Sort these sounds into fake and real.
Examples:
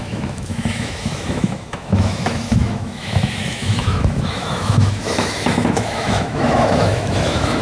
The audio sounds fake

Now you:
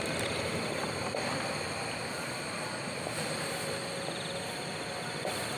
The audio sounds real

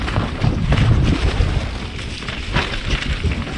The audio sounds real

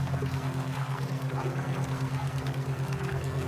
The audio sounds fake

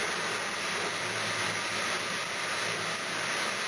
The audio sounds real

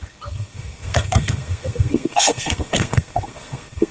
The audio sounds fake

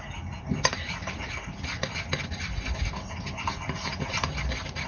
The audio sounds real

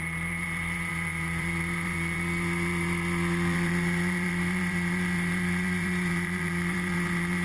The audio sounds fake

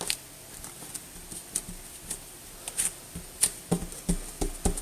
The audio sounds real